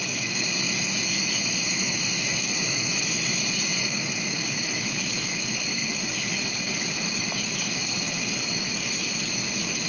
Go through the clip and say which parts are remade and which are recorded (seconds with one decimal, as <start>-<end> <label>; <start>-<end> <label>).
0.0-9.9 remade